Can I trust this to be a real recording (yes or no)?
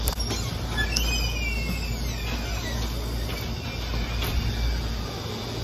yes